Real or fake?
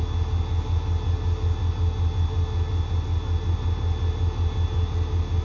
real